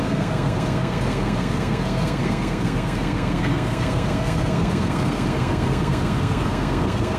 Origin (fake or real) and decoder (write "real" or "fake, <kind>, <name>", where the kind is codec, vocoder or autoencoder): fake, codec, SNAC